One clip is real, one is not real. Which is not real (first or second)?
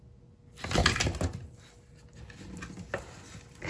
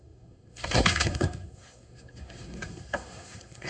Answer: second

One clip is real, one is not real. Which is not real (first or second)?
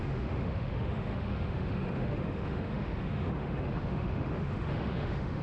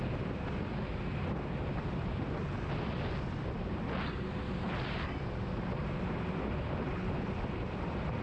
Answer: first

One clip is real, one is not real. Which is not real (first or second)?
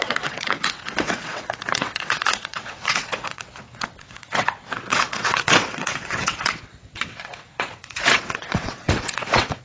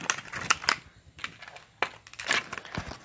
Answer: first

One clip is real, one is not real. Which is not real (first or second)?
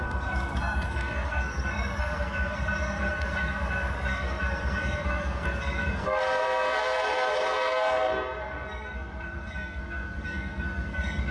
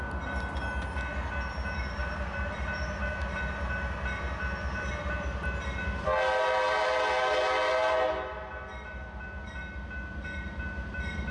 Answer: first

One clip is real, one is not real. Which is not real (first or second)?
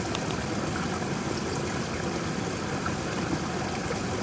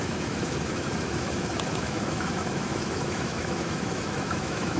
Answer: second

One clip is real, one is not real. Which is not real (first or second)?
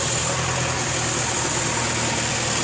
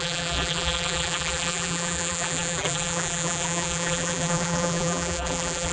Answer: second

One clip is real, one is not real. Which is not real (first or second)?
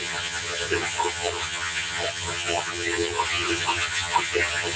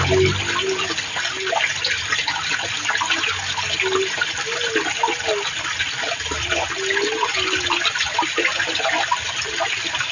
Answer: first